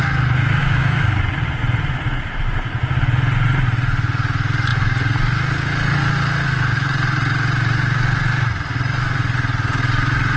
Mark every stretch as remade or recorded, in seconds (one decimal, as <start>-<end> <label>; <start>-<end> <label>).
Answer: 0.0-0.6 recorded; 0.6-1.2 remade; 1.2-10.4 recorded